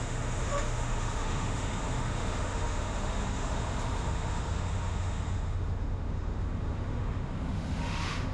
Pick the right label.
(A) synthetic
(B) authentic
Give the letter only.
A